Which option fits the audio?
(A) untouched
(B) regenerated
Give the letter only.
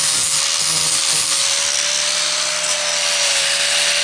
A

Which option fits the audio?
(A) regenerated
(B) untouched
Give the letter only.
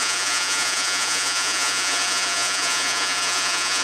A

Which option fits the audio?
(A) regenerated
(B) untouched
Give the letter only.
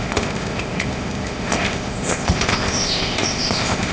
A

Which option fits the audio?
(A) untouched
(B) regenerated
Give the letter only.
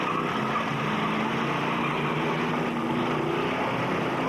A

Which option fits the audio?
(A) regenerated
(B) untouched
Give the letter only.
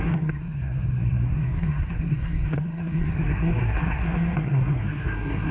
A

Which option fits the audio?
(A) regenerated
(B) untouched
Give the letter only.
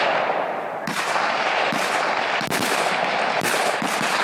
B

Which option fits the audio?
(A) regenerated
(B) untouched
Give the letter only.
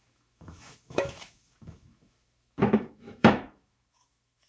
A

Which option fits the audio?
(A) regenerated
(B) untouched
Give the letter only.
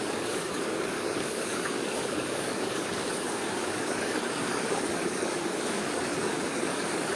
A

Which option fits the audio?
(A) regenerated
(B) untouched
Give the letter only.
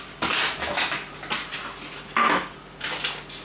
B